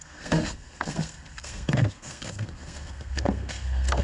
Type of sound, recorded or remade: remade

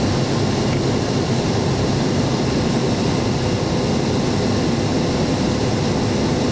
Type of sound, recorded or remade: recorded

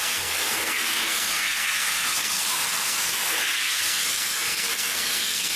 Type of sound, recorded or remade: remade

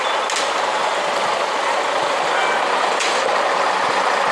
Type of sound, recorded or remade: recorded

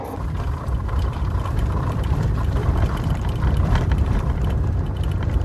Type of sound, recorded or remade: remade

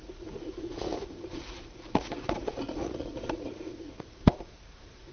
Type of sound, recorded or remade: remade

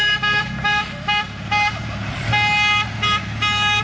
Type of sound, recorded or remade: recorded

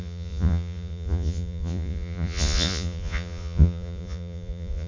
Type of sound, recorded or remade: remade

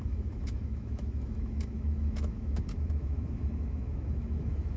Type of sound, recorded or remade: remade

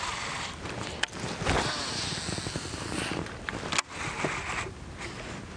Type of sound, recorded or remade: recorded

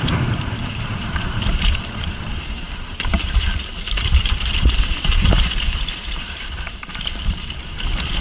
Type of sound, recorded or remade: remade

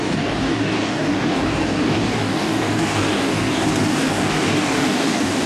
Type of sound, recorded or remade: remade